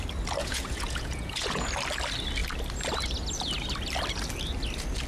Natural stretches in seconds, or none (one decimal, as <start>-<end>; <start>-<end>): 0.0-0.4; 1.7-5.1